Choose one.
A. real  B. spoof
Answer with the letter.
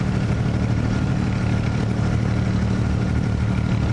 A